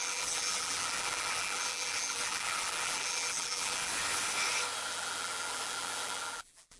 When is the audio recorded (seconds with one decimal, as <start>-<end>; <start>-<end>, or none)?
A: 3.9-4.9